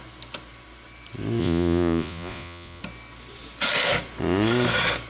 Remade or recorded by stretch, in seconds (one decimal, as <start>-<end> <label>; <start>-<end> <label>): 0.0-1.4 recorded; 1.4-2.8 remade; 2.8-5.1 recorded

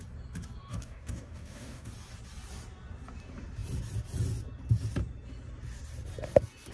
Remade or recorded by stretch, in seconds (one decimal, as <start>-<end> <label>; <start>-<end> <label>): 0.0-0.7 recorded; 0.7-1.9 remade; 1.9-6.7 recorded

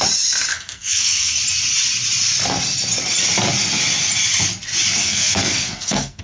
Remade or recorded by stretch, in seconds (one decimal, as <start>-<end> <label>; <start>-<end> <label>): 0.0-0.5 recorded; 0.5-1.3 remade; 1.3-5.0 recorded; 5.0-6.2 remade

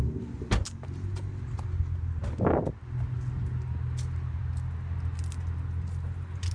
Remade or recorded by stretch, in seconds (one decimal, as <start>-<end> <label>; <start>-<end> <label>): 0.0-6.5 recorded

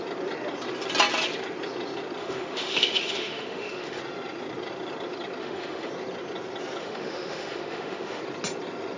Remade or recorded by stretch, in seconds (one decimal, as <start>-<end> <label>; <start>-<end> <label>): 0.0-2.2 recorded; 2.2-4.0 remade; 4.0-5.4 recorded; 5.4-5.9 remade; 5.9-6.8 recorded; 6.8-8.2 remade; 8.2-9.0 recorded